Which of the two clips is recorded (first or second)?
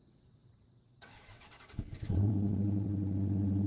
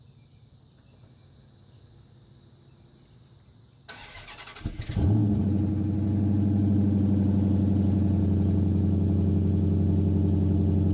second